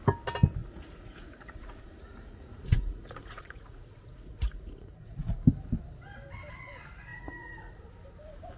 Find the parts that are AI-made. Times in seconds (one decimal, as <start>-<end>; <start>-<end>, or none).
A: 0.6-5.3; 7.1-7.8